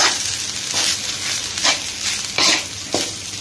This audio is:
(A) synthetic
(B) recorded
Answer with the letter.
B